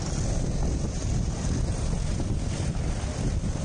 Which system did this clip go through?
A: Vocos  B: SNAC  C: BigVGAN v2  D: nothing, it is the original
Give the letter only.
D